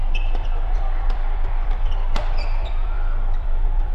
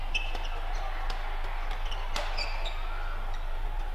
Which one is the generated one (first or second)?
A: first